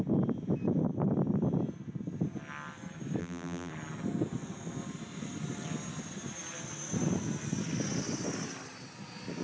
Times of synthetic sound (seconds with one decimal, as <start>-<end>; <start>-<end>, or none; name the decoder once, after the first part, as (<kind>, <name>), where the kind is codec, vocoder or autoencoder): 3.2-3.7 (vocoder, BigVGAN v2)